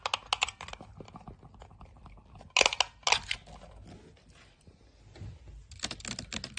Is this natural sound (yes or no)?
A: yes